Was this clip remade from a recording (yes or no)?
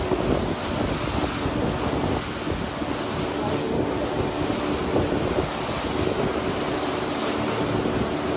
no